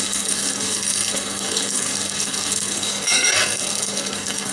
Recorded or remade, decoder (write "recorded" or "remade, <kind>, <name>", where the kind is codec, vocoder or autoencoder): remade, codec, SNAC